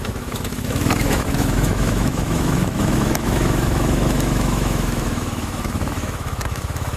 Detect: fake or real fake